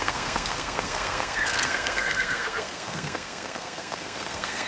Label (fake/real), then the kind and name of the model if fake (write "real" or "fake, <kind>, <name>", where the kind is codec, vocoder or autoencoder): fake, codec, SNAC